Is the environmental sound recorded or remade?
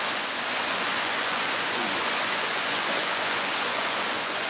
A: remade